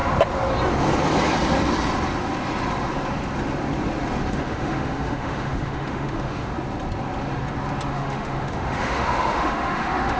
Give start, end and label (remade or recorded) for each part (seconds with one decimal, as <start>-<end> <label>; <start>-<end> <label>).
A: 0.0-4.3 recorded; 4.3-6.5 remade; 6.5-7.9 recorded; 7.9-10.2 remade